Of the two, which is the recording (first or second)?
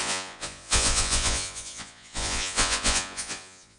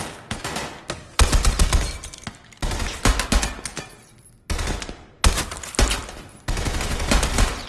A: second